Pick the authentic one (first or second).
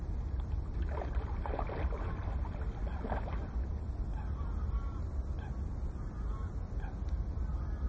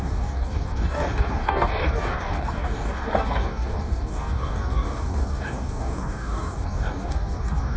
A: first